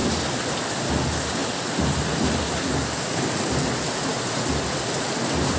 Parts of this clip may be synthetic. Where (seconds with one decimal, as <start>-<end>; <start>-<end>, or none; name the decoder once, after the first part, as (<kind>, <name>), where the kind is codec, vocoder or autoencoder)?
none